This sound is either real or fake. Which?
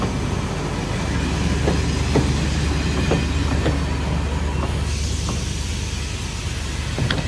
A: real